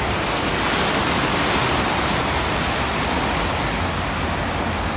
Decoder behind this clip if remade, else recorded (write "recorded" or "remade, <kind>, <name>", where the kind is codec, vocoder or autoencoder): recorded